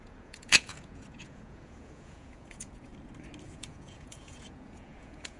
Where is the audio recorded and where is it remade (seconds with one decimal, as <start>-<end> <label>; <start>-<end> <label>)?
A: 0.0-2.9 remade; 2.9-3.4 recorded; 3.4-5.4 remade